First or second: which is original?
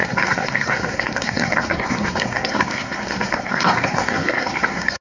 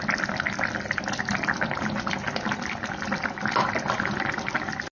second